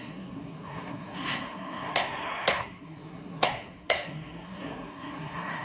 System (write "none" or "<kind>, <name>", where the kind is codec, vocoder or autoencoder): codec, SNAC